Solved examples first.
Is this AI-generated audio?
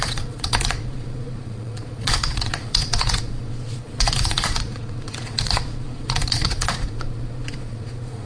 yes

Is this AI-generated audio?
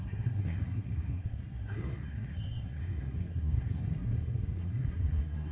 yes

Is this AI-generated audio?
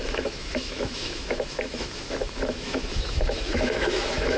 yes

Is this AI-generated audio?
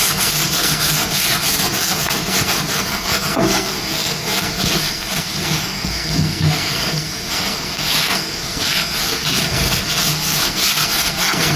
yes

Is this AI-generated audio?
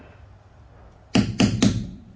no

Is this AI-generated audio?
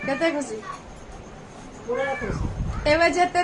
no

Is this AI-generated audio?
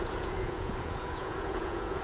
yes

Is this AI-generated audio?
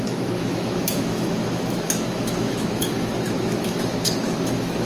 yes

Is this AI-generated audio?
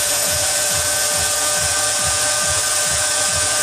yes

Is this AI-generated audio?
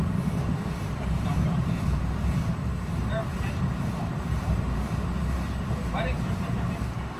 yes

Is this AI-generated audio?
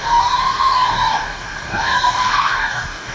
yes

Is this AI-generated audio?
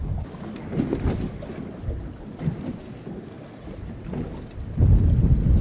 no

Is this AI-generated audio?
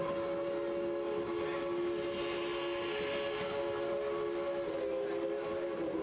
no